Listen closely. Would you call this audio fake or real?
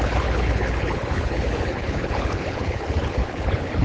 fake